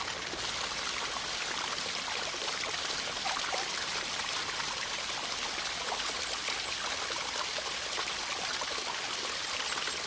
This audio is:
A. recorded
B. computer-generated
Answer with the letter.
A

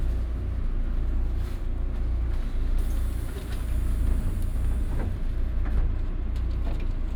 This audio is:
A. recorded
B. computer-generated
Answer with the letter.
A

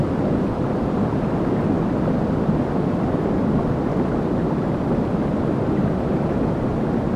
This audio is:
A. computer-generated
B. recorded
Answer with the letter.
B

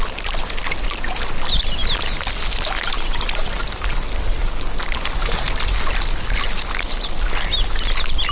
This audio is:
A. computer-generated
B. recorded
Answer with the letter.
B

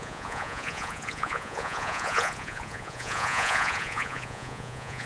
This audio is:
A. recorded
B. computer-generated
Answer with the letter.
B